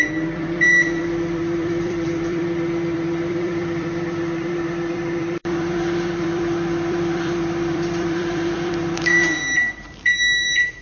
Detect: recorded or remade remade